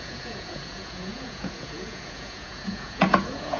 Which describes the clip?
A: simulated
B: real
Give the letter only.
A